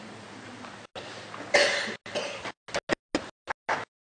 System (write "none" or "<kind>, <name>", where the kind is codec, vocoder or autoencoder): none